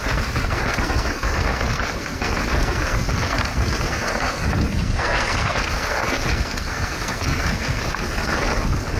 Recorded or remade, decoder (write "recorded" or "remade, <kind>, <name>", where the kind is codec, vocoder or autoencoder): remade, codec, SNAC